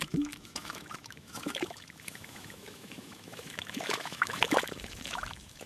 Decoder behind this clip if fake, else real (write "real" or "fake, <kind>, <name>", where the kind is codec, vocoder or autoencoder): fake, autoencoder, DAC-VAE